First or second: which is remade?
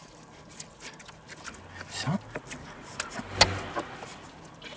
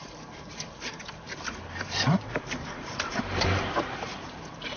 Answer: second